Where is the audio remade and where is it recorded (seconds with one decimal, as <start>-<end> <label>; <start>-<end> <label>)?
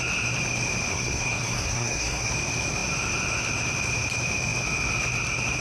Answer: 0.0-0.9 recorded; 0.9-2.3 remade; 2.3-5.6 recorded